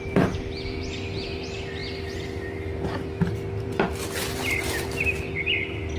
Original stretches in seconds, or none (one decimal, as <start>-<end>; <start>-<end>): 0.0-6.0